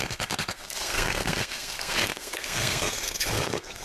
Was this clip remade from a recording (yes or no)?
yes